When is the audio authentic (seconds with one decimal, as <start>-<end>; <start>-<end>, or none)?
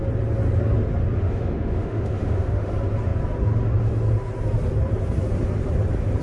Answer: 0.0-1.2; 2.7-6.2